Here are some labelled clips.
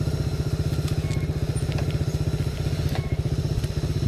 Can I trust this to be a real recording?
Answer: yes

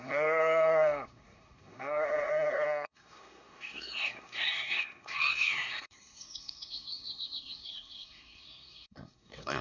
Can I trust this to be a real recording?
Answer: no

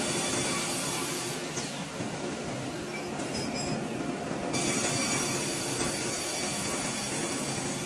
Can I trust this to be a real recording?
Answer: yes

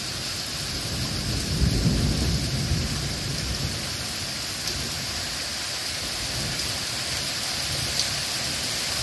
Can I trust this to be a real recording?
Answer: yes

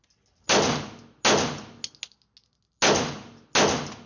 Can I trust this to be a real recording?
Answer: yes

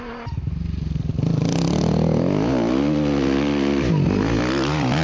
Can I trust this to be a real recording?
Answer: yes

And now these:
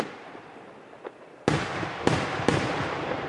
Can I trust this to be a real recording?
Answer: yes